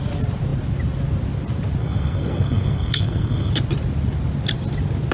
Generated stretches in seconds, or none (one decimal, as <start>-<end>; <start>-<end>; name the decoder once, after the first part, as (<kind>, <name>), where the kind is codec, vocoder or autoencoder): 1.8-3.5 (codec, SNAC)